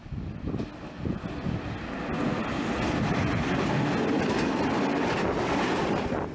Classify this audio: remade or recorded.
recorded